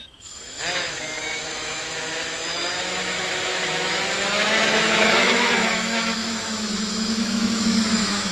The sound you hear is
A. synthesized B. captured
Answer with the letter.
A